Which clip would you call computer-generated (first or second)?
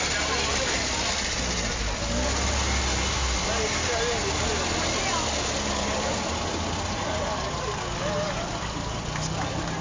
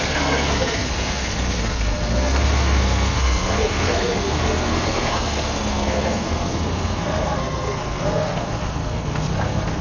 second